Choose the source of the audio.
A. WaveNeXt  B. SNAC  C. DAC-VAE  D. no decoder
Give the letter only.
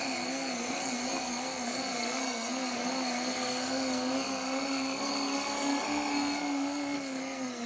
B